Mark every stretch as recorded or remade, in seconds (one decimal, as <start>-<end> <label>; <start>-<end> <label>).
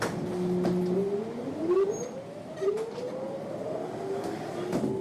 0.0-5.0 recorded